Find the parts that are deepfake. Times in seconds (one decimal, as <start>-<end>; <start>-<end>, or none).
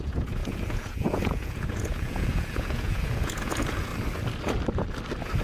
0.0-3.9